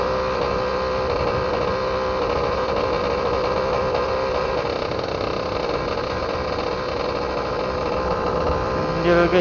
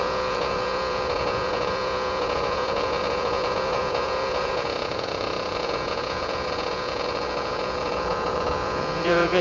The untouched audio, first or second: first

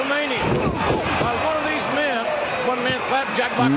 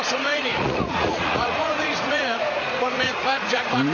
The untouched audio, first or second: first